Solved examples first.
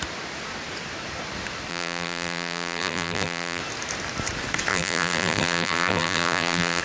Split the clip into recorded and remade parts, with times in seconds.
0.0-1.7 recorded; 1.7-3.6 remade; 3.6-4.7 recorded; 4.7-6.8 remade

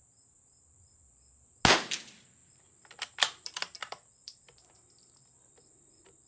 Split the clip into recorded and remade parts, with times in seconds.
0.0-2.4 recorded; 2.4-6.3 remade

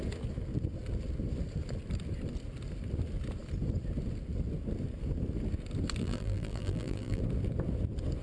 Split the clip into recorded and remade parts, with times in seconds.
0.0-6.0 recorded; 6.0-7.2 remade; 7.2-8.2 recorded

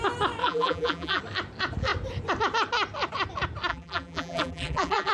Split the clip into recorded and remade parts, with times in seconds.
0.0-0.4 recorded; 0.4-1.2 remade; 1.2-3.7 recorded; 3.7-5.1 remade

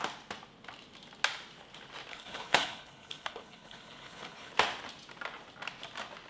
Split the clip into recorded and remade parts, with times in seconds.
0.0-2.1 recorded; 2.1-4.5 remade; 4.5-6.3 recorded

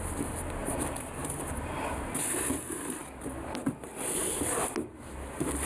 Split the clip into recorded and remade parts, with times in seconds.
0.0-0.6 recorded; 0.6-2.5 remade; 2.5-5.7 recorded